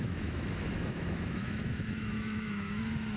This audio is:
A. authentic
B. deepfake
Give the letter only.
B